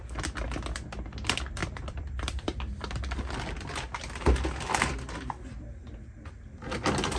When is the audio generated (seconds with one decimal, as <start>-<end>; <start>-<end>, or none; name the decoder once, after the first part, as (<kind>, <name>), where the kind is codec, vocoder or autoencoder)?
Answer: 1.6-3.0 (vocoder, BigVGAN v2)

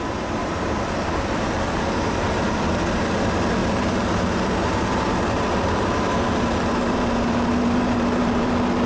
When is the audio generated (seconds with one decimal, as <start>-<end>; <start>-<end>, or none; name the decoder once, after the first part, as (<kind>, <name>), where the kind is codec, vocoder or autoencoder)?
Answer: 0.4-2.8 (vocoder, BigVGAN v2); 3.6-8.5